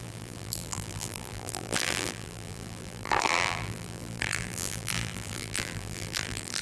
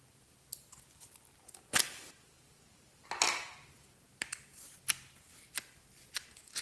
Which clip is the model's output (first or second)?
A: first